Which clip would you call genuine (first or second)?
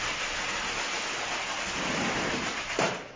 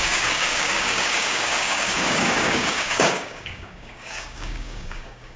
first